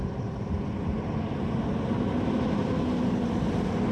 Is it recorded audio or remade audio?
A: recorded